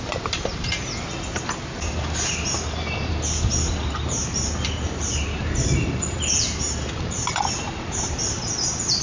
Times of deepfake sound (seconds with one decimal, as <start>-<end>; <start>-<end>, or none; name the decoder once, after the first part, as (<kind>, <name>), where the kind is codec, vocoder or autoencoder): 3.5-8.5 (vocoder, BigVGAN v2)